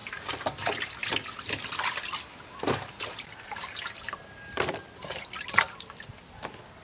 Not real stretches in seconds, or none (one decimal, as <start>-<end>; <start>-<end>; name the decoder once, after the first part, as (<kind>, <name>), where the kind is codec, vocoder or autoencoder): none